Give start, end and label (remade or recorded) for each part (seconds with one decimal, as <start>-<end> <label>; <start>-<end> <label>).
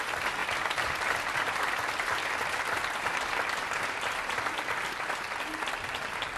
0.0-6.4 recorded